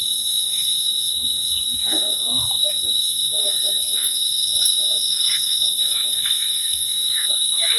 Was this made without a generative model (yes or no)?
no